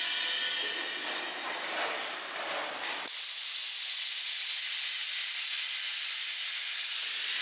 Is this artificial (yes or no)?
no